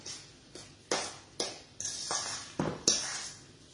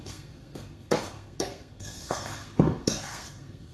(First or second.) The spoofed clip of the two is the second